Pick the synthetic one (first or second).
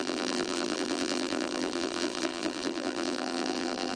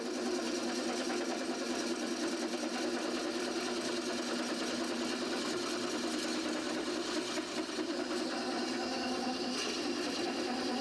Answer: first